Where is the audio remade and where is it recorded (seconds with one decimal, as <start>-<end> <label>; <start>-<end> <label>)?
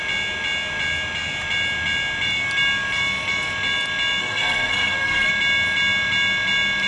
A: 0.0-4.2 recorded; 4.2-5.3 remade; 5.3-6.9 recorded